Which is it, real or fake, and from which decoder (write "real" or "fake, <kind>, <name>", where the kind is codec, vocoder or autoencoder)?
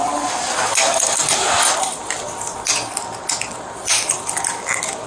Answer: real